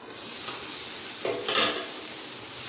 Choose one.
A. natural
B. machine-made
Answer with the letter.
A